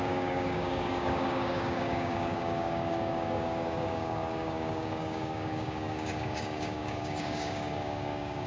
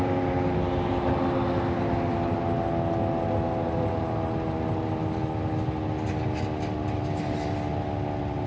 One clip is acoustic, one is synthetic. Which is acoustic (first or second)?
second